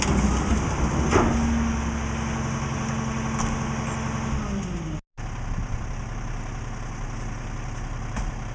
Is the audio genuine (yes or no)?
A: yes